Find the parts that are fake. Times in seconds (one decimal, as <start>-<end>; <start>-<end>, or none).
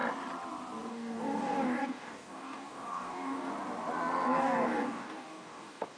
0.9-3.5; 4.4-6.0